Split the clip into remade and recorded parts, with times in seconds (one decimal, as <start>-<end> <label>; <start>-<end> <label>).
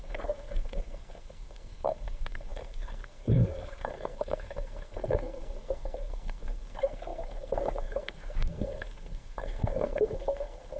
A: 0.0-10.8 remade